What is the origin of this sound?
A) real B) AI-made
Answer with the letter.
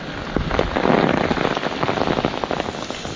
A